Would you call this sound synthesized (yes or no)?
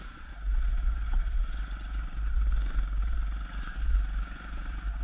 yes